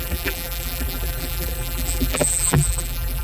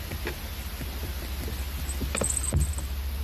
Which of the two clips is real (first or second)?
second